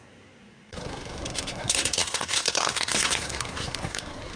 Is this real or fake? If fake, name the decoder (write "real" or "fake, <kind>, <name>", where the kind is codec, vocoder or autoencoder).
fake, codec, SNAC